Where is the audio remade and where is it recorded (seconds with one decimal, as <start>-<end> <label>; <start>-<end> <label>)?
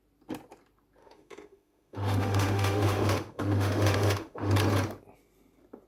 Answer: 0.0-1.0 recorded; 1.0-4.5 remade; 4.5-5.9 recorded